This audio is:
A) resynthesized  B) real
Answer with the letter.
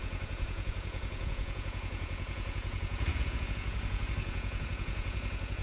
A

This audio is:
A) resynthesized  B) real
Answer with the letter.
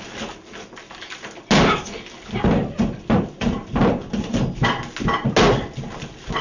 B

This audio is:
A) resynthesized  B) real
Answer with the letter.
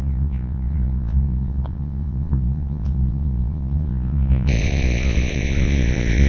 A